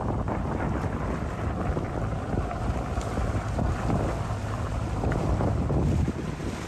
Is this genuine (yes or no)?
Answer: yes